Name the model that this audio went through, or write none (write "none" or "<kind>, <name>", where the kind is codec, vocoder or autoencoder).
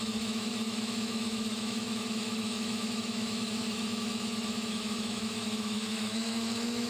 autoencoder, DAC-VAE